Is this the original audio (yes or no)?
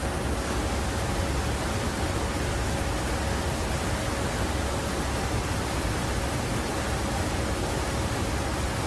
yes